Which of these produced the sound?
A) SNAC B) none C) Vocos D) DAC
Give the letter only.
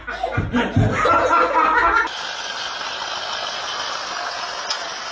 B